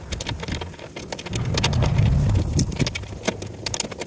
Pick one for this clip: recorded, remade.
recorded